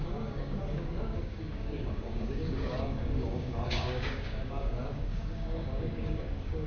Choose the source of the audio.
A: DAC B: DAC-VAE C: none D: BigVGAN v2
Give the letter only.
A